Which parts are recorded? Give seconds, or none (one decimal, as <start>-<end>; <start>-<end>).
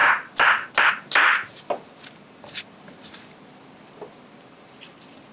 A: 0.0-5.3